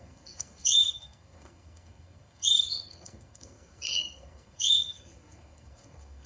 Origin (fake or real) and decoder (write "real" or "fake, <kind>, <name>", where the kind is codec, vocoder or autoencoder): fake, codec, SNAC